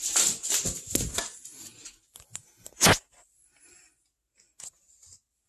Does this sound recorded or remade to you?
recorded